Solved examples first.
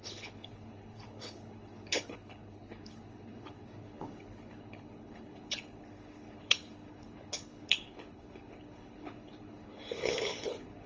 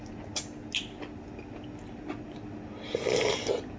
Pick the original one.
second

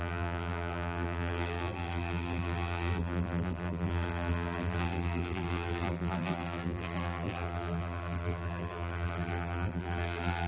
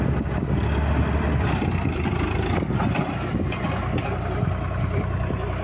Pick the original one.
second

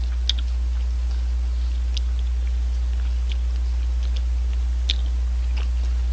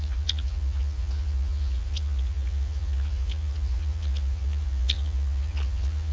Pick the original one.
first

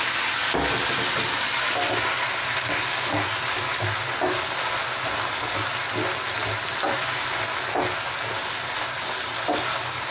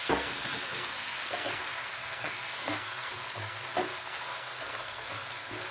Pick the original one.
first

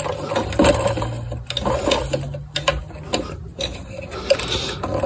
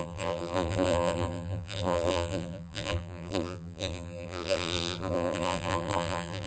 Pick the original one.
first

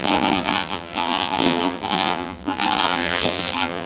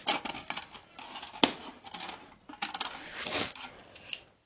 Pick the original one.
second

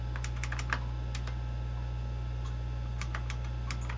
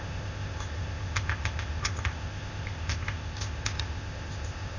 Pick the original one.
first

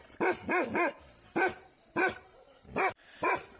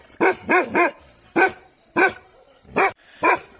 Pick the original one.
first